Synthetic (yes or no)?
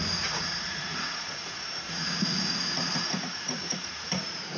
yes